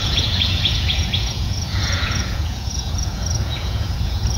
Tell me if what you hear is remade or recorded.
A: remade